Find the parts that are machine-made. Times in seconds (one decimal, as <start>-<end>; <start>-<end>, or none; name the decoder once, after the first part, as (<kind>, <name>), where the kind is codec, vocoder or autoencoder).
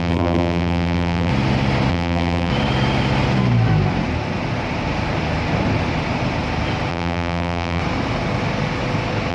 0.0-1.3 (vocoder, BigVGAN v2); 1.9-2.5; 6.9-7.8